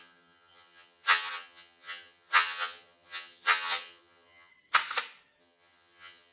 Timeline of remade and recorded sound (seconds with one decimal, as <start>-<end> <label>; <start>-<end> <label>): 0.0-4.5 remade; 4.5-5.4 recorded; 5.4-6.3 remade